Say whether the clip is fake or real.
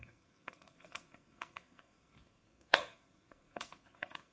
fake